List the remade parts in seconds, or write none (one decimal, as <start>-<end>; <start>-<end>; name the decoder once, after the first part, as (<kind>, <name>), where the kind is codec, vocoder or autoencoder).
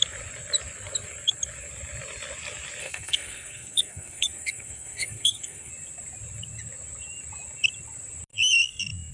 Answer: 2.8-5.7 (codec, SNAC)